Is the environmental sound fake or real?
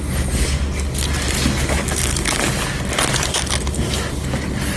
real